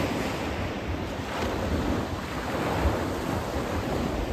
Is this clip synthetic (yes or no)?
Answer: no